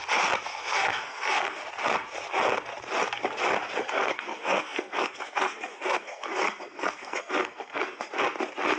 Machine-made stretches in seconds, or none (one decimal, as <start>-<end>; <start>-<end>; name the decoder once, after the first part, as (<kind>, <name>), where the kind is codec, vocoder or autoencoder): 0.5-1.6 (codec, SNAC); 3.8-8.1